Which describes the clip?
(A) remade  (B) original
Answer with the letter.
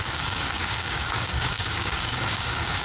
A